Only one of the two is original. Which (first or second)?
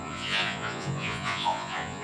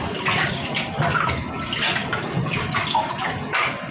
second